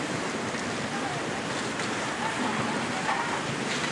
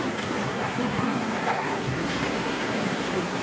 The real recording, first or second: first